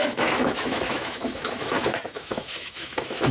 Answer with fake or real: fake